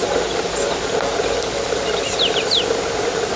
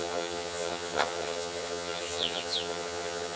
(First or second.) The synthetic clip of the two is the second